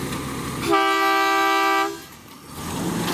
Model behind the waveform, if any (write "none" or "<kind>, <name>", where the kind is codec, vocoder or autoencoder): none